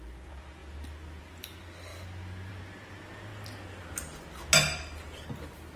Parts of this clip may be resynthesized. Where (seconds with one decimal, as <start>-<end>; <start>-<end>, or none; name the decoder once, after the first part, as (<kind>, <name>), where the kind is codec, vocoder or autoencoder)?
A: none